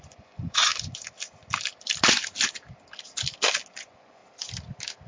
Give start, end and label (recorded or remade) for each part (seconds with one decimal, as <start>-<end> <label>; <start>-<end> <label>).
0.0-0.7 remade; 0.7-3.8 recorded; 3.8-4.2 remade; 4.2-5.1 recorded